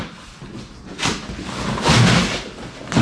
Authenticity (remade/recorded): recorded